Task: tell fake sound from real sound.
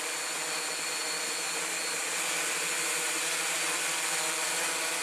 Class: real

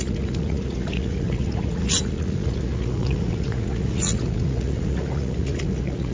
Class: fake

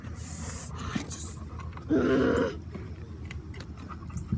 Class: real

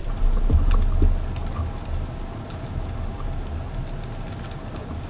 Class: real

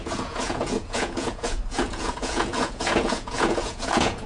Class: fake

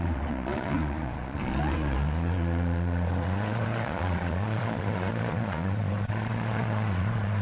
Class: fake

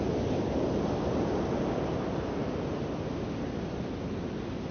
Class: real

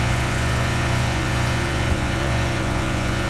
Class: fake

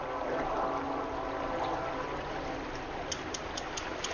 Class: real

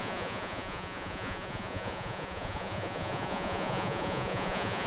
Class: fake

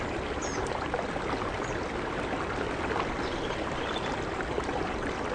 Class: real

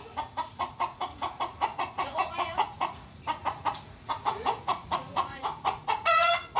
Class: fake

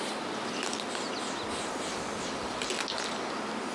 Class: real